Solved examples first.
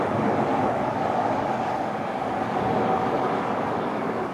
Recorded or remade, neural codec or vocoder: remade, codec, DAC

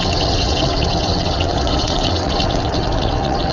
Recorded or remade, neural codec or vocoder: remade, vocoder, WaveNeXt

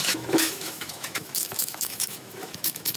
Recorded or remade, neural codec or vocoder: remade, autoencoder, DAC-VAE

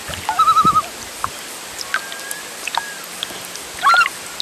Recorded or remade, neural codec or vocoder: recorded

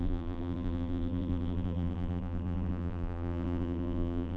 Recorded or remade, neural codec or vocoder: remade, vocoder, BigVGAN v2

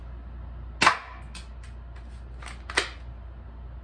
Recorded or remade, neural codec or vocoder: recorded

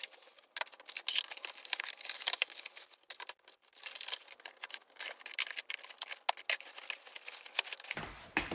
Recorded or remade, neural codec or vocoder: recorded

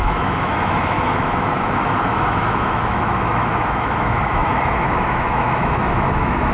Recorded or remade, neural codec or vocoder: remade, autoencoder, DAC-VAE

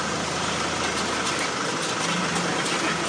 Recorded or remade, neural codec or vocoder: recorded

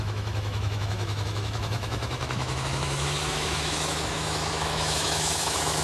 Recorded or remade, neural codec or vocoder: remade, autoencoder, DAC-VAE